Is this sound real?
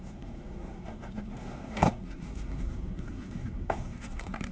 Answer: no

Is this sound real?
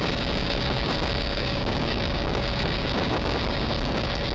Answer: no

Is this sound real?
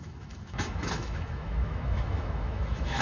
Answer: no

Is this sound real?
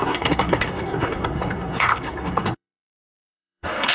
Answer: no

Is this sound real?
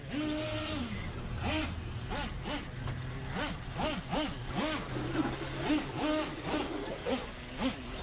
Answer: yes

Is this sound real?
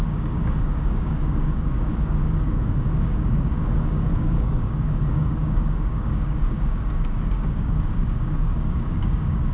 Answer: no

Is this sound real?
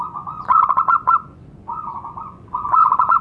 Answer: no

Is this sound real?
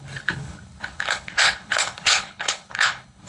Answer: no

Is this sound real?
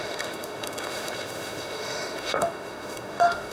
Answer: no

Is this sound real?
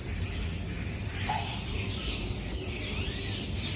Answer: yes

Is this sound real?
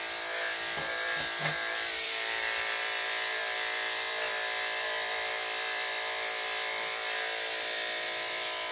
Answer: no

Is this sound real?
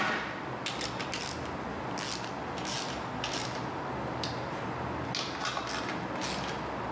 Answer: yes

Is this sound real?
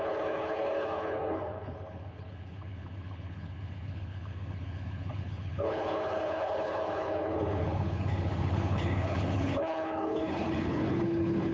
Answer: no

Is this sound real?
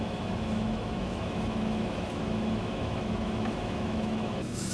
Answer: no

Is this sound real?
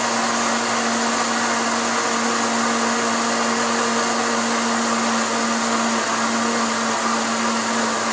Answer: yes